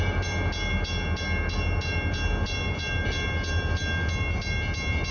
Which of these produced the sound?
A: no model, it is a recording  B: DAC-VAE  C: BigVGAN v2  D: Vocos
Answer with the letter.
A